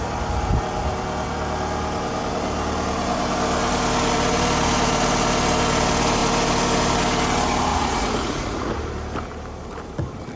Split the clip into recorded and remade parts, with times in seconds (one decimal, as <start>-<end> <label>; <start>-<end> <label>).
0.0-7.7 recorded; 7.7-8.8 remade; 8.8-10.4 recorded